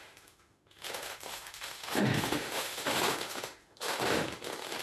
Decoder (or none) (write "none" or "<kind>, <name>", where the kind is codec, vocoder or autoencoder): autoencoder, DAC-VAE